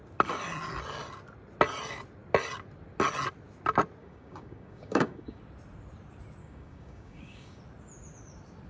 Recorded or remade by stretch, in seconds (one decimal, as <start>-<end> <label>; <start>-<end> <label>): 0.0-4.0 recorded; 4.0-5.4 remade; 5.4-6.4 recorded; 6.4-7.6 remade; 7.6-8.7 recorded